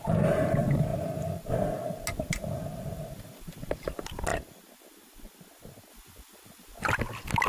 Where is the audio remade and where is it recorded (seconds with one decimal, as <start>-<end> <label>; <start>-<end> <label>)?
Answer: 0.0-7.5 recorded